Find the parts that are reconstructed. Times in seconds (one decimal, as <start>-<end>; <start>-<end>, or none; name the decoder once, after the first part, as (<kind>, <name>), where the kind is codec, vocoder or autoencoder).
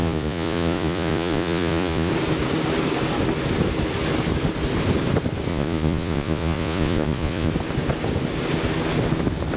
0.0-2.1 (vocoder, Vocos); 5.5-7.5